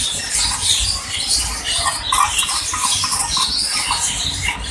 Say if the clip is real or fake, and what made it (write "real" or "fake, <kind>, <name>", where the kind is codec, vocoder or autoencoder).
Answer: real